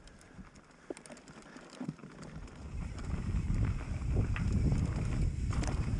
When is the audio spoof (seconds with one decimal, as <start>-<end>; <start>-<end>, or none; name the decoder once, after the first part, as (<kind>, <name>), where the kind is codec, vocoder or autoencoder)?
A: 0.0-6.0 (vocoder, BigVGAN v2)